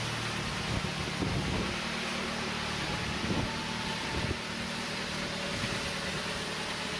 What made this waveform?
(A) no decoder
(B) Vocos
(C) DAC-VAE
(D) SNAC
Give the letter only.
A